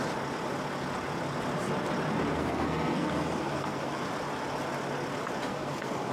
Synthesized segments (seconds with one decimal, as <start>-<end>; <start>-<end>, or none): 2.3-4.0; 5.5-6.1